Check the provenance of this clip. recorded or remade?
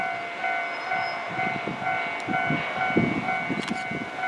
recorded